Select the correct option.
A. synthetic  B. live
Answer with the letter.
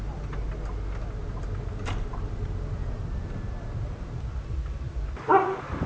B